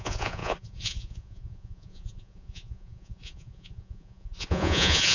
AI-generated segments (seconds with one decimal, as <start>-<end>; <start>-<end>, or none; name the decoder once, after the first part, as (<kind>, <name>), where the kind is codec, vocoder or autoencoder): 0.0-5.1 (vocoder, Vocos)